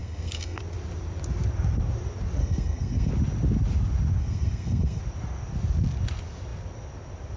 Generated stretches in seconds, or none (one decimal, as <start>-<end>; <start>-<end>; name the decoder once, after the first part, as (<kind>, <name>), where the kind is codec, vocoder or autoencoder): 0.0-0.6 (codec, SNAC); 2.4-3.1; 4.2-5.0